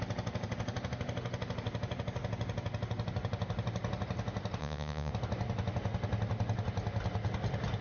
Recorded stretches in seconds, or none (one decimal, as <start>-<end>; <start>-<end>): 0.0-4.6; 5.1-7.8

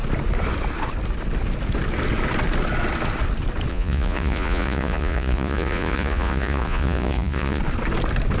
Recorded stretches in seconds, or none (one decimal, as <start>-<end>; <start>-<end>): 0.0-3.7; 7.6-8.4